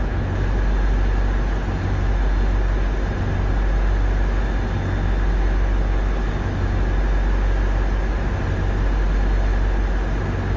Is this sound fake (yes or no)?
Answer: no